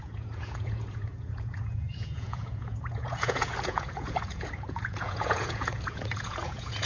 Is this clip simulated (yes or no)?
yes